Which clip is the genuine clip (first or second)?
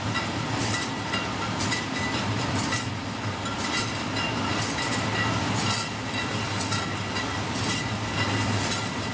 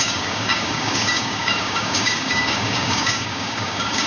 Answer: first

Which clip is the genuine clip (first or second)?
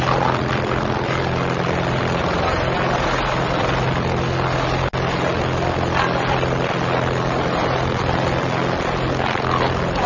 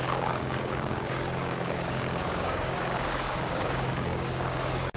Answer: first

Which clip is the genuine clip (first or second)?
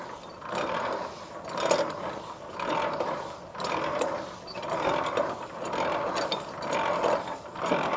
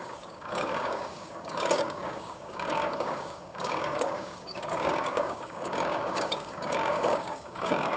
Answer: first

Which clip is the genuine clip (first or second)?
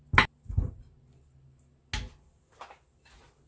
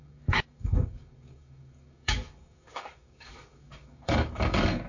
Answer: first